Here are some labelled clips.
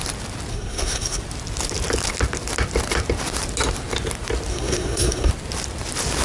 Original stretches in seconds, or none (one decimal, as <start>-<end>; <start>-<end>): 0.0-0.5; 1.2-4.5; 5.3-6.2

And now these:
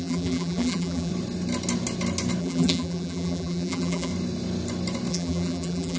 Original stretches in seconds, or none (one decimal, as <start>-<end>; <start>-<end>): 1.1-2.4; 4.1-5.1

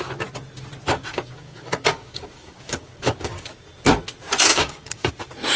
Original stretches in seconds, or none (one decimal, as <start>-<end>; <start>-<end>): 0.0-1.1; 3.5-4.5; 5.1-5.6

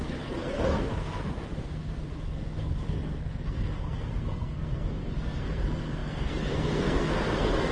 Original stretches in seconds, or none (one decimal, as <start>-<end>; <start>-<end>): none